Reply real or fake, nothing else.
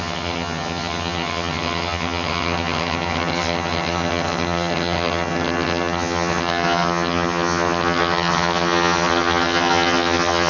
fake